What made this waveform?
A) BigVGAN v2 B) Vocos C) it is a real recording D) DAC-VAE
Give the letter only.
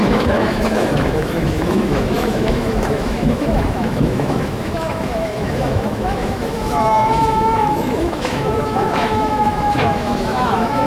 D